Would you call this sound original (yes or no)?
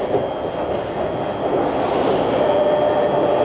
yes